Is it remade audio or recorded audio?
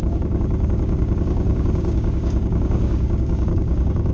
remade